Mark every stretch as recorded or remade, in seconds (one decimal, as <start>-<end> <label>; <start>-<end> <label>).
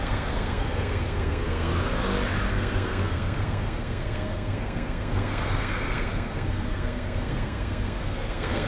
0.0-1.7 remade; 1.7-2.5 recorded; 2.5-8.7 remade